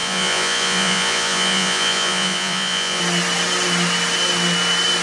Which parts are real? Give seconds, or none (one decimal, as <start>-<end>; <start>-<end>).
3.0-5.0